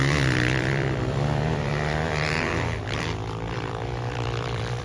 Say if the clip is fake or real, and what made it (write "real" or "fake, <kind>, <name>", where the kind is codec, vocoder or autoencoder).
fake, vocoder, BigVGAN v2